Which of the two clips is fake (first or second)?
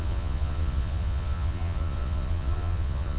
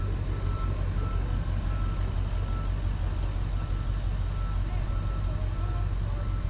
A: first